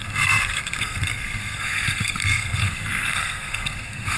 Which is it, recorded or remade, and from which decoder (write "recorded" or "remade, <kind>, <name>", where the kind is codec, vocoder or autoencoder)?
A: remade, codec, SNAC